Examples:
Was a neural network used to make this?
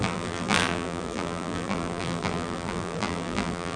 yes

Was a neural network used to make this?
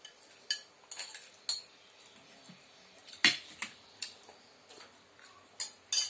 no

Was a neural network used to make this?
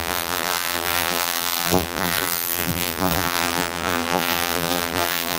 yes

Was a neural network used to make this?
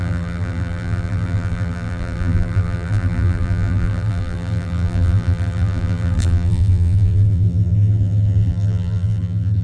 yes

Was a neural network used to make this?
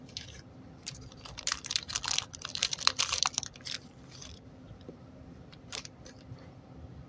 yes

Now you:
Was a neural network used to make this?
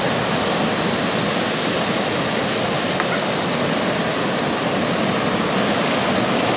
no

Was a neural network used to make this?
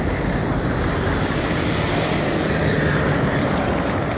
yes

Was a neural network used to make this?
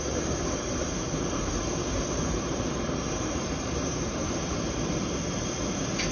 yes